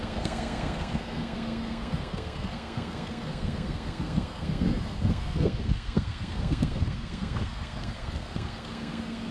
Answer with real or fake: fake